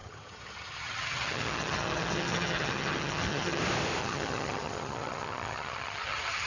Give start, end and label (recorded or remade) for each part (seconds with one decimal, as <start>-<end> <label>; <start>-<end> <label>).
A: 0.0-3.6 remade; 3.6-4.0 recorded; 4.0-6.5 remade